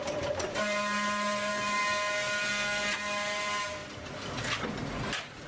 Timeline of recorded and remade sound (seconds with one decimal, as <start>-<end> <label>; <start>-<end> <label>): 0.0-1.8 remade; 1.8-3.0 recorded; 3.0-3.8 remade; 3.8-5.5 recorded